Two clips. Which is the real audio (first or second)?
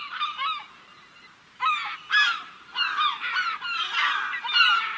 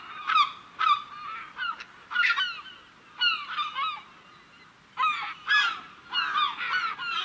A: second